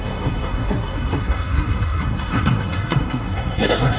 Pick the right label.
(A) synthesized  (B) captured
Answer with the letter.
A